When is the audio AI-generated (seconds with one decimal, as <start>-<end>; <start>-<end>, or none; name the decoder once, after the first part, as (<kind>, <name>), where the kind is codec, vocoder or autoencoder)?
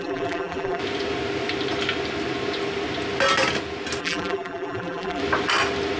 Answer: 0.0-0.8 (vocoder, BigVGAN v2); 4.0-5.2